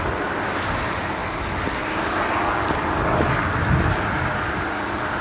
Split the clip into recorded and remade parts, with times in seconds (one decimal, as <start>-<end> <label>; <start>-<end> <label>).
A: 0.0-5.2 recorded